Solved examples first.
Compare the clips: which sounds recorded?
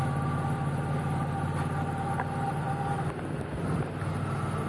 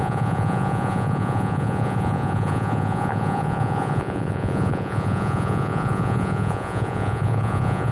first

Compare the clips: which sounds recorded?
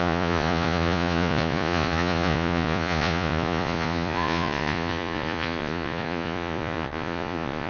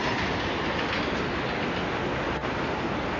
second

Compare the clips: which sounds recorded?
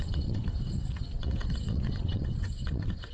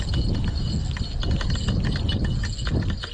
second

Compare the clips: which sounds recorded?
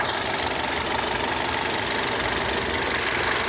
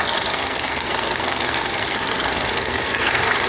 first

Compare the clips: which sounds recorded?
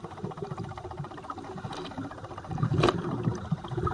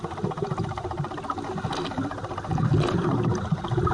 second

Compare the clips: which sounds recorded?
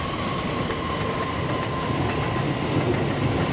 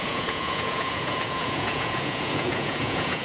first